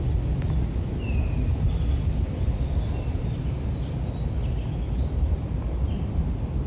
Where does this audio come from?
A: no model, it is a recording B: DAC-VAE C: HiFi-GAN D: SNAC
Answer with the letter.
A